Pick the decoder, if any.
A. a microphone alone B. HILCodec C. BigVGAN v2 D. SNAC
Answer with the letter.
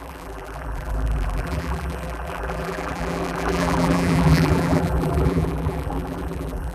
C